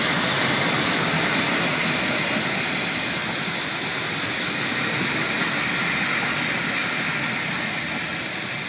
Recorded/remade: recorded